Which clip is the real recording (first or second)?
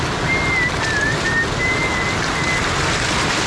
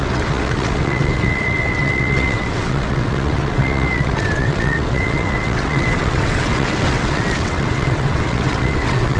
first